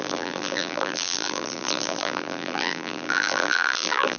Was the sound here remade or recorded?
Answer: remade